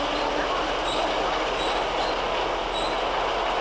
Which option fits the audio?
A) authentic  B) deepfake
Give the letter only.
A